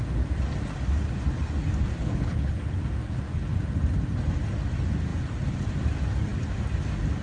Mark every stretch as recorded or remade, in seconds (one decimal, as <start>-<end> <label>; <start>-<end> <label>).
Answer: 0.0-1.9 recorded; 1.9-2.8 remade; 2.8-7.2 recorded